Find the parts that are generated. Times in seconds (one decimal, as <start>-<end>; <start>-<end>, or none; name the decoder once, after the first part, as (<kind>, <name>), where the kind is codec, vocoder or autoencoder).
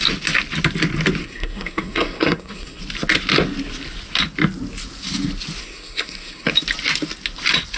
1.2-2.8 (codec, SNAC); 5.6-6.5